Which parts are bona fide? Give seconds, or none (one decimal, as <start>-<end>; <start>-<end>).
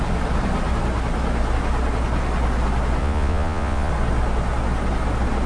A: 0.0-3.0; 3.9-5.5